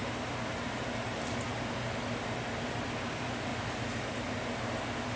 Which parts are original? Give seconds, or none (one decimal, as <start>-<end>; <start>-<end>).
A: 0.0-5.2